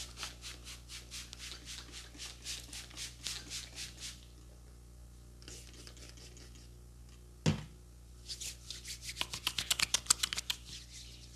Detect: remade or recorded recorded